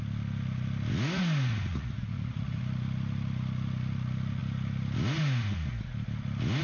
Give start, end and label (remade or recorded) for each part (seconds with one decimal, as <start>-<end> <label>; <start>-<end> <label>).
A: 0.0-1.7 recorded; 1.7-2.6 remade; 2.6-6.6 recorded